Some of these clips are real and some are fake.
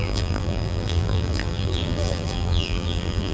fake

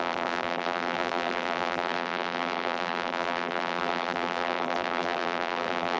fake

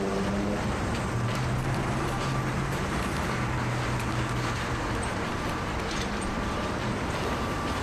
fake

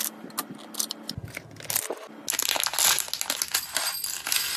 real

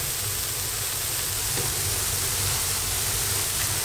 real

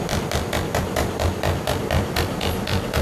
fake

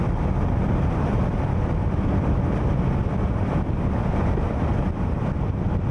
fake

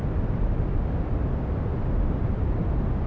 real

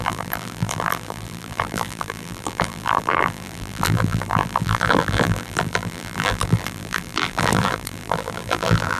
fake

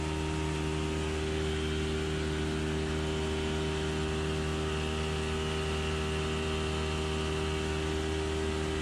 real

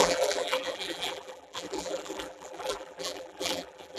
fake